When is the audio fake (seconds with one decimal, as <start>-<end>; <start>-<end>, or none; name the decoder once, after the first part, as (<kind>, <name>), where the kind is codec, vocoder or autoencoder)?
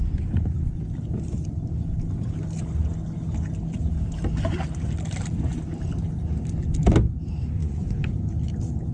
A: 7.6-8.1 (vocoder, Vocos)